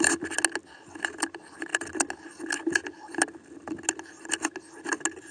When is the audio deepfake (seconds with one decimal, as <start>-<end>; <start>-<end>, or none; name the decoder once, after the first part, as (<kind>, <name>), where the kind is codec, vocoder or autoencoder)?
none